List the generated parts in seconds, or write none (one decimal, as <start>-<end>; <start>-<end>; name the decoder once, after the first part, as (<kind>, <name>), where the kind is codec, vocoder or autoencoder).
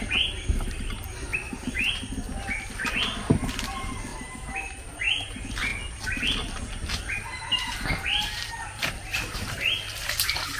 1.3-1.9 (vocoder, BigVGAN v2); 4.1-5.0; 7.5-9.7